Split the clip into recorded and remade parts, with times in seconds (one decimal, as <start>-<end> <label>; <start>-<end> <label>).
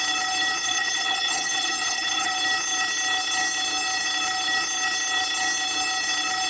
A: 0.0-0.6 recorded; 0.6-2.3 remade; 2.3-6.5 recorded